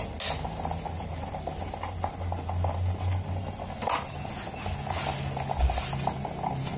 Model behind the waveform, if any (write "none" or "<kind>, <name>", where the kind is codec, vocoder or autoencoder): none